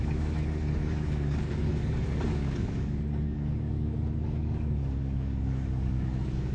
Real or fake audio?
fake